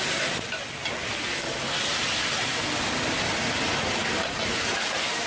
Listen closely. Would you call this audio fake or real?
real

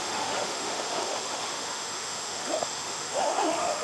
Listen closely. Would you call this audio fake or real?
fake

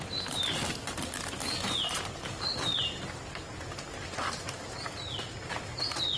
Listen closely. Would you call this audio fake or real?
real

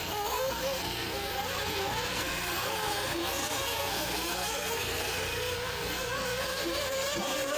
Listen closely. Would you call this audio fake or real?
fake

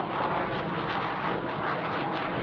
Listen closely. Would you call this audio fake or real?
real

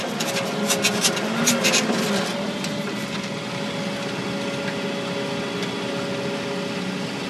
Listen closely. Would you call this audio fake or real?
real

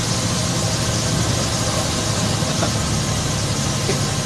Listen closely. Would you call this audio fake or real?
real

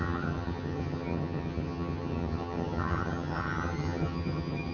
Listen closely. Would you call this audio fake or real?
fake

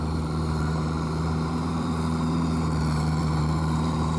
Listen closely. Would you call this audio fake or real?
fake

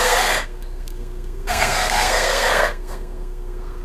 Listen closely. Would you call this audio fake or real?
fake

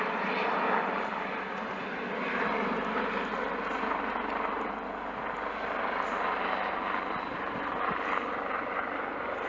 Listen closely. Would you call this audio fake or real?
real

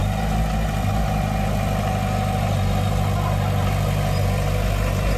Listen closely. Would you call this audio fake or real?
real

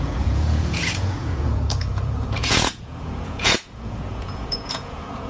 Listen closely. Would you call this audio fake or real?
fake